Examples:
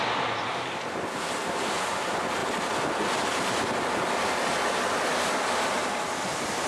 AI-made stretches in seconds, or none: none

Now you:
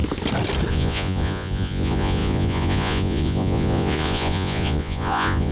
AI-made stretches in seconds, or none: 0.7-5.5